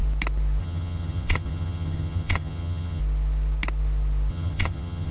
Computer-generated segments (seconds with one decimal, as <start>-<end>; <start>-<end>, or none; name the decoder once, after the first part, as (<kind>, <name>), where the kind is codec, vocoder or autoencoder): 0.6-3.0 (vocoder, HiFi-GAN); 4.3-5.1

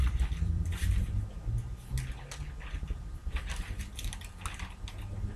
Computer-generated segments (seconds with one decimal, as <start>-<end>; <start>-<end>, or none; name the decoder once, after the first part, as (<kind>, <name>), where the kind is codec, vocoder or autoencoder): 0.0-1.9 (vocoder, BigVGAN v2); 3.2-3.9

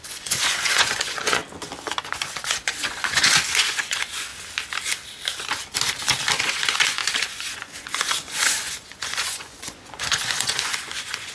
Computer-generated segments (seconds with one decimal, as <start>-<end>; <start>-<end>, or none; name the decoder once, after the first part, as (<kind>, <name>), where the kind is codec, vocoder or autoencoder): 0.0-1.4 (vocoder, Vocos); 2.0-4.3; 6.4-11.3

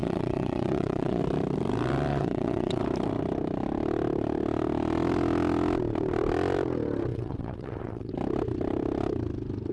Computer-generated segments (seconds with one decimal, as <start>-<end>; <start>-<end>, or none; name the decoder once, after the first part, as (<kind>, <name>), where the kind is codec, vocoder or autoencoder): 0.0-1.2 (vocoder, WaveNeXt); 2.1-2.8; 7.1-8.1